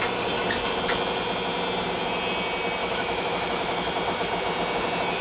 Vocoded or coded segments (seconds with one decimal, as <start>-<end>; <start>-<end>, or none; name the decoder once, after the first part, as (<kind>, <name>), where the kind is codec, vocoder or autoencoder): 2.8-3.9 (autoencoder, DAC-VAE)